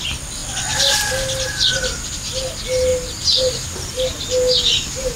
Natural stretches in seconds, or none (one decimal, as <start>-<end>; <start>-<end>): 0.0-5.2